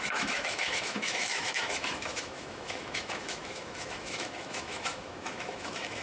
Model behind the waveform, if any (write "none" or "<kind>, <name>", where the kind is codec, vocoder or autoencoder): autoencoder, DAC-VAE